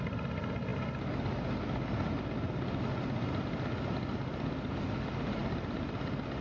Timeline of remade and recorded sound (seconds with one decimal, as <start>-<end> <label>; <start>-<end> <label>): 0.0-6.4 recorded